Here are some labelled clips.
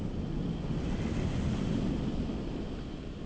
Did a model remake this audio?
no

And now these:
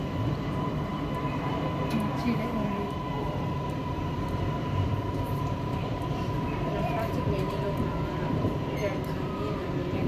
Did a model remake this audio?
yes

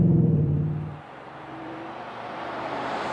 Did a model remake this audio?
yes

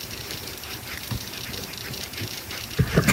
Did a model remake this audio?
yes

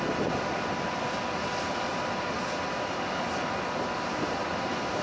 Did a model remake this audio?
no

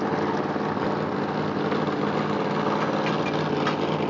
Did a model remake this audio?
no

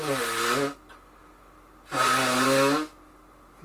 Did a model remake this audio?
no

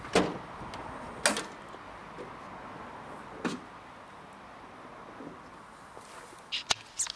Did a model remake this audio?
no